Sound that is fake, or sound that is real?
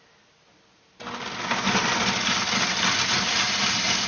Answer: real